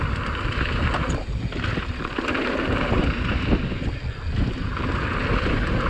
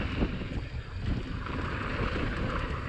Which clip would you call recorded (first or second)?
first